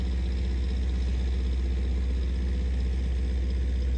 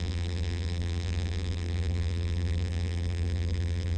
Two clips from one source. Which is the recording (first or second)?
first